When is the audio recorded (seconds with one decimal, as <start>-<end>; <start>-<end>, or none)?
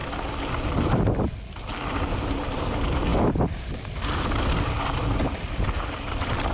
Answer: 0.0-6.5